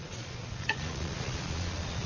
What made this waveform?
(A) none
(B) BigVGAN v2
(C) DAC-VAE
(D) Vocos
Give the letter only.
D